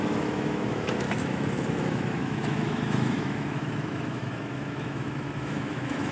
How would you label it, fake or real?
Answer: fake